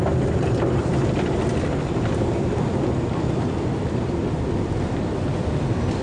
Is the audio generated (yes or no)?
no